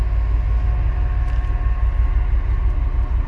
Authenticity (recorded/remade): recorded